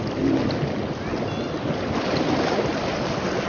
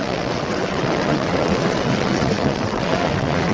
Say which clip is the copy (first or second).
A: second